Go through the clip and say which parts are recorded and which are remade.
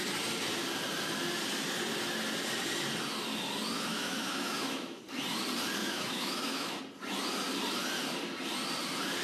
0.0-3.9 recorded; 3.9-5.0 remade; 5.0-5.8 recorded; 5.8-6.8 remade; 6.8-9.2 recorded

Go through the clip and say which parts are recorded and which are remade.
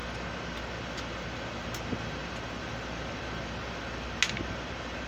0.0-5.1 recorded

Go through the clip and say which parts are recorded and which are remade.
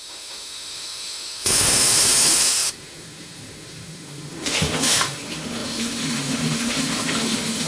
0.0-7.7 remade